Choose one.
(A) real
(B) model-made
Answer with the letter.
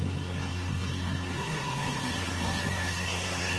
B